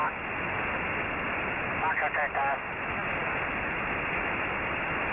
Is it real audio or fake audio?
real